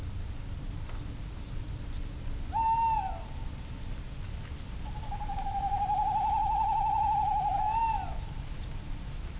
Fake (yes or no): no